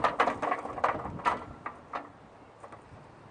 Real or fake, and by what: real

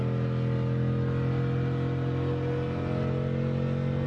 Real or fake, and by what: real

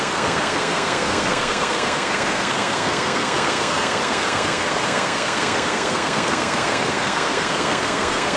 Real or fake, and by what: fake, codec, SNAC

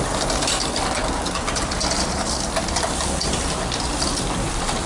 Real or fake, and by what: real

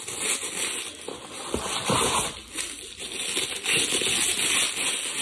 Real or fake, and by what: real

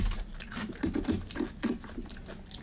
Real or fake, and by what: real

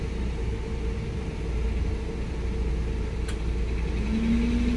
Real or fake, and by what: real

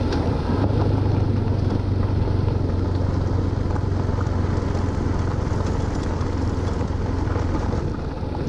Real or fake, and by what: real